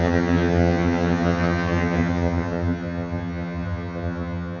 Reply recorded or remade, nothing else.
remade